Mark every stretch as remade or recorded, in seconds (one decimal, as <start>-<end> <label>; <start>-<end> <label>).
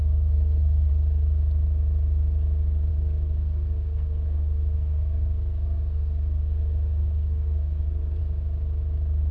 0.0-0.9 remade; 0.9-2.9 recorded; 2.9-8.2 remade; 8.2-9.3 recorded